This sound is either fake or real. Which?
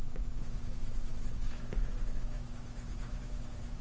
fake